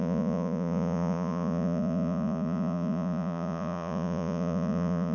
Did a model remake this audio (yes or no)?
yes